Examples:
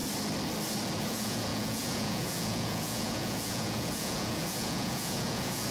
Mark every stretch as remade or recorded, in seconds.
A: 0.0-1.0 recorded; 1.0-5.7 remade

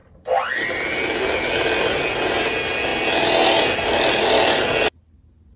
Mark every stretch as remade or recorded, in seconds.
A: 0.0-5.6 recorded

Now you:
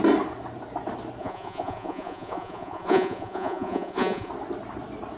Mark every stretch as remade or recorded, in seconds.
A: 0.0-1.2 recorded; 1.2-4.3 remade; 4.3-5.2 recorded

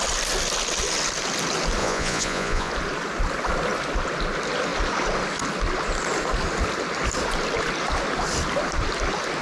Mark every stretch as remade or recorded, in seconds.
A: 0.0-1.8 recorded; 1.8-2.7 remade; 2.7-9.4 recorded